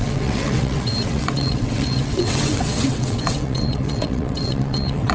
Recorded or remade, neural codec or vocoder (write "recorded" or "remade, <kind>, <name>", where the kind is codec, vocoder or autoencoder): remade, vocoder, WaveNeXt